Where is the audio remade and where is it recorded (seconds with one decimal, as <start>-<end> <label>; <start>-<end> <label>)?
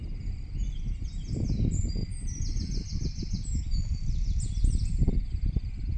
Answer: 0.0-4.5 recorded; 4.5-5.3 remade; 5.3-6.0 recorded